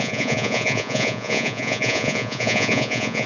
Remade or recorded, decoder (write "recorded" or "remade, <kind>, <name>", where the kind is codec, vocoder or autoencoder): remade, vocoder, Vocos